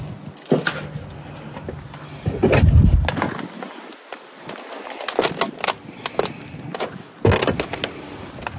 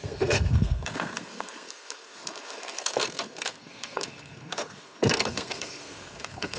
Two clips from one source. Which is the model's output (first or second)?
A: second